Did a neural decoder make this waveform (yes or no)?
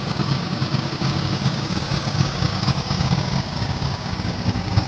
yes